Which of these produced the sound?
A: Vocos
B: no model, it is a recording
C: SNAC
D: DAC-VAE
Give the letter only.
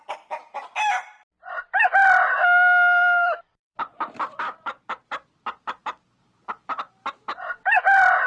B